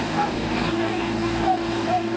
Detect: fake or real fake